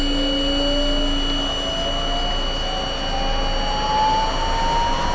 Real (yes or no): yes